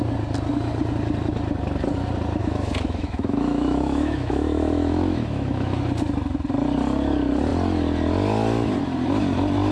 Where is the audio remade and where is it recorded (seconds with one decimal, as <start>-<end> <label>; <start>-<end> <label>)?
0.0-2.4 recorded; 2.4-5.8 remade; 5.8-9.7 recorded